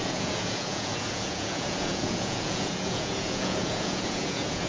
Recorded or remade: remade